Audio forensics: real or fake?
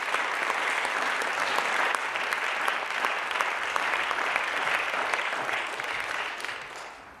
real